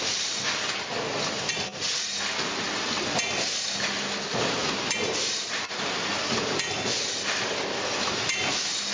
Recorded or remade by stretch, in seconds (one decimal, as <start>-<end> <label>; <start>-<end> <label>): 0.0-8.9 recorded